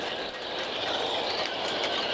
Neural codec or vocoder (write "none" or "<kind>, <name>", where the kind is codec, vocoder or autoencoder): none